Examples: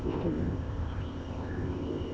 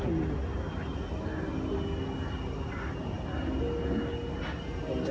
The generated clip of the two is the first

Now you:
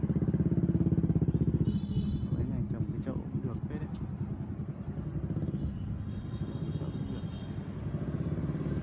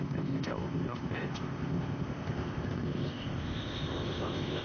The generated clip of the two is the second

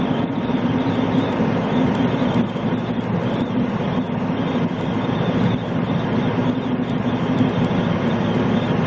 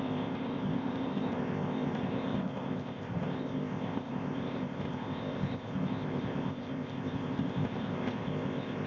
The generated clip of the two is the second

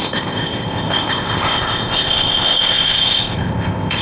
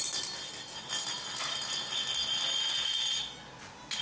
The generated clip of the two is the first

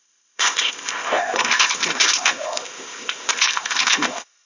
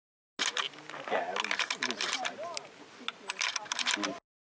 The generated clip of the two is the first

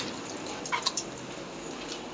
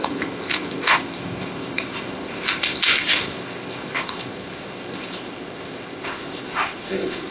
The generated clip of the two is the second